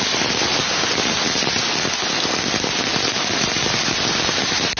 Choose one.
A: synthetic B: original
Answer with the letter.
B